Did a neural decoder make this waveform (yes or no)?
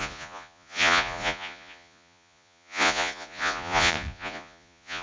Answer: yes